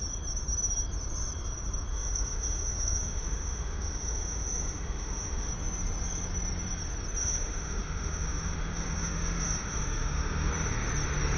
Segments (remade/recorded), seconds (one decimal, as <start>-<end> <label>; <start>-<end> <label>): 0.0-1.9 recorded; 1.9-5.5 remade; 5.5-7.2 recorded; 7.2-10.5 remade; 10.5-11.4 recorded